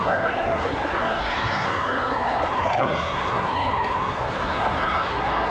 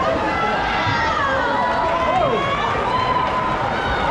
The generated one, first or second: first